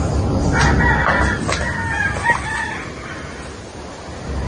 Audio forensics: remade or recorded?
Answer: recorded